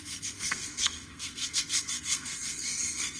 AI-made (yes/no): yes